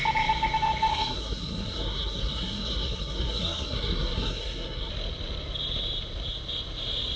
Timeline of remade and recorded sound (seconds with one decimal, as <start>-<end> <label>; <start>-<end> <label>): 0.0-0.9 recorded; 0.9-4.9 remade; 4.9-7.2 recorded